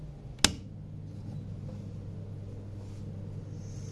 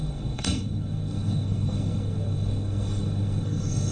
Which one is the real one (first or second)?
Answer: first